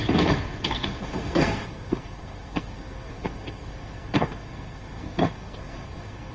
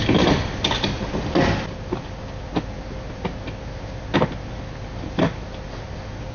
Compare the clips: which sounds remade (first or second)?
first